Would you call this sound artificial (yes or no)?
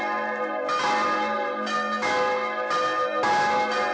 no